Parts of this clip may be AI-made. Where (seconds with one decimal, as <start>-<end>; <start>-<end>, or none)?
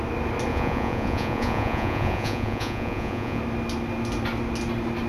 0.5-3.4